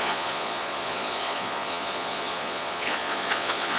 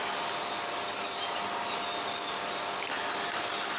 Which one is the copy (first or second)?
first